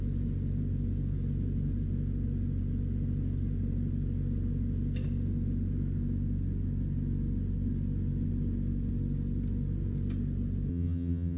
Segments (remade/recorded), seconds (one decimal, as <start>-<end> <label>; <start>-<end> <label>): 0.0-10.7 recorded; 10.7-11.4 remade